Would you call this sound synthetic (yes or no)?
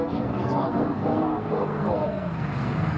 yes